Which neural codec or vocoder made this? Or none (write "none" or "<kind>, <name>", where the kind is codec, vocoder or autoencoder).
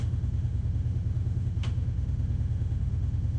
autoencoder, DAC-VAE